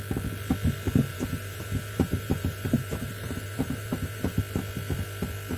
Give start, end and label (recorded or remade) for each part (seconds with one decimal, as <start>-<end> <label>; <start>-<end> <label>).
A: 0.0-1.1 recorded; 1.1-4.4 remade; 4.4-5.6 recorded